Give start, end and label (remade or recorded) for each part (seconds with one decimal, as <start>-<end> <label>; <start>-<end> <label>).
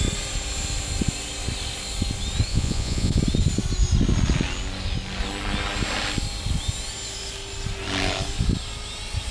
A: 0.0-2.5 recorded; 2.5-3.2 remade; 3.2-9.3 recorded